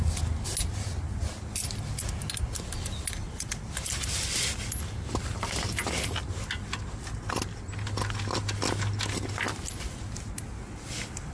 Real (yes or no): yes